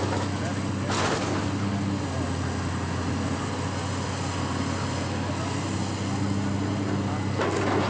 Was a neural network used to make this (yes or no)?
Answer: no